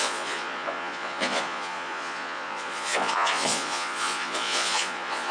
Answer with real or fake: fake